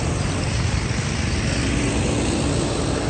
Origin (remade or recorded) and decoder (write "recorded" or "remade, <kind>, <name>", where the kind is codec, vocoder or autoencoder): recorded